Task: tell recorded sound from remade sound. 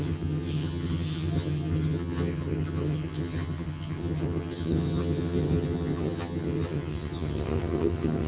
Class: remade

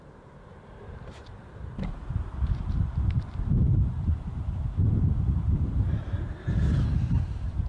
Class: remade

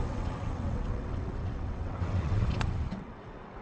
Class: remade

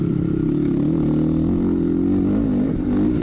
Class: recorded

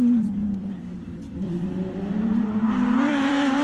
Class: remade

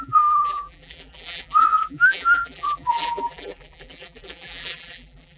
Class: remade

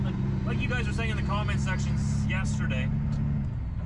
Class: recorded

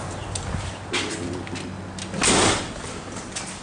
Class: recorded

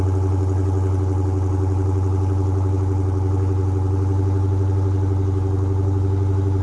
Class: recorded